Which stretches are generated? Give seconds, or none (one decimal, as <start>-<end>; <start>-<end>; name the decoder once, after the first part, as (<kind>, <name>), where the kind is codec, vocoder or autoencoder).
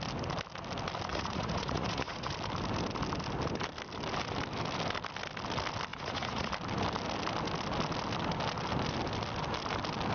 1.1-2.3 (vocoder, Vocos); 5.9-6.5